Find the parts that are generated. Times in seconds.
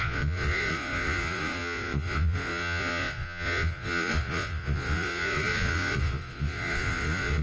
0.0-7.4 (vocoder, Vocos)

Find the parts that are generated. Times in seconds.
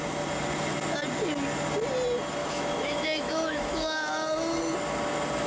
2.4-4.6 (autoencoder, DAC-VAE)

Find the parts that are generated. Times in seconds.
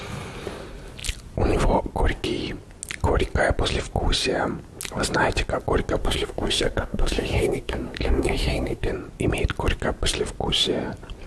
6.0-8.9 (codec, SNAC)